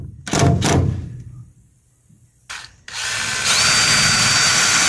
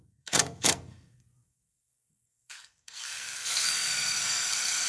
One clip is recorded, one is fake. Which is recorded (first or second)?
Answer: first